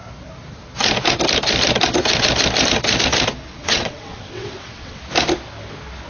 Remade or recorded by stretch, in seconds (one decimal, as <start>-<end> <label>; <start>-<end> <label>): 0.0-3.5 recorded; 3.5-5.0 remade; 5.0-6.1 recorded